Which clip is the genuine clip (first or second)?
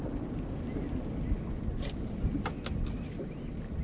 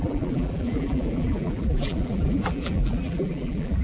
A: first